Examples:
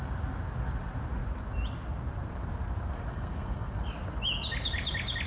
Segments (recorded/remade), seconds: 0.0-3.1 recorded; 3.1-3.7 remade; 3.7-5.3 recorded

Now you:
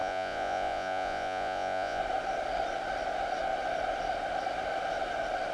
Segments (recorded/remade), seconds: 0.0-2.0 remade; 2.0-5.5 recorded

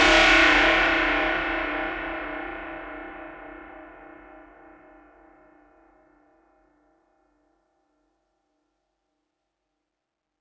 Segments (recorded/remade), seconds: 0.0-10.4 recorded

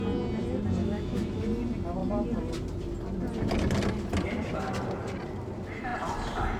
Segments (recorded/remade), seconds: 0.0-0.8 recorded; 0.8-1.4 remade; 1.4-6.6 recorded

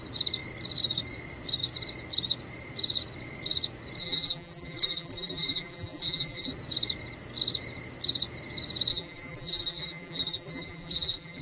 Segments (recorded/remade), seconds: 0.0-4.0 recorded; 4.0-6.5 remade; 6.5-8.9 recorded; 8.9-11.4 remade

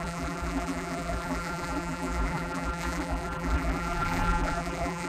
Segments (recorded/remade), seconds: 0.0-5.1 remade

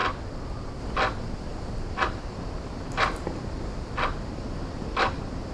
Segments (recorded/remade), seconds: 0.0-5.5 recorded